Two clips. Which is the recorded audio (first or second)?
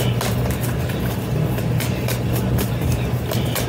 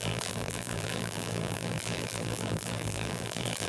first